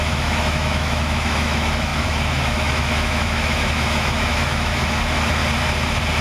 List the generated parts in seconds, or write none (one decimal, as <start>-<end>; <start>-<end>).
0.0-5.4